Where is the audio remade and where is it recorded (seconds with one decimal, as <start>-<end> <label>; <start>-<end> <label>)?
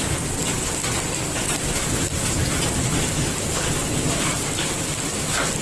0.0-5.6 recorded